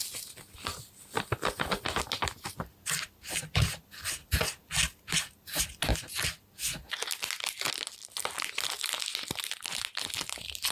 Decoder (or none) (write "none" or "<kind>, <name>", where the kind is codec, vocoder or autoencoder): none